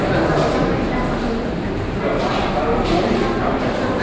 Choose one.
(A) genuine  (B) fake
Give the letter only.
A